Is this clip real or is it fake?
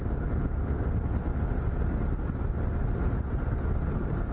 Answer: real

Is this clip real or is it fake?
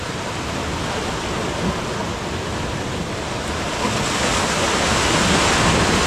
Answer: real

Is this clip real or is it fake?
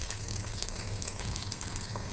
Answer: fake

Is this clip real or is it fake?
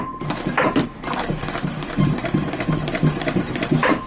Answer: real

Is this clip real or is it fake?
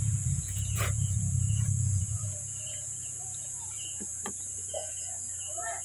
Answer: fake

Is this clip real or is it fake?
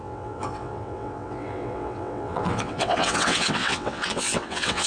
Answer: fake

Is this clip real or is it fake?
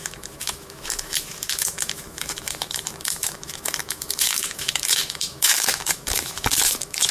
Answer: fake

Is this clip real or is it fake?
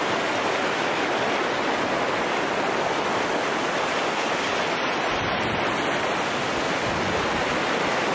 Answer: real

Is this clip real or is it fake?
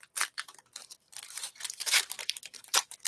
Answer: fake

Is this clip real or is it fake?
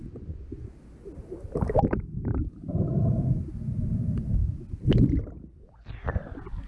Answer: real